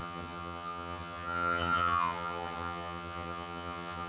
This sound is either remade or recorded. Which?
remade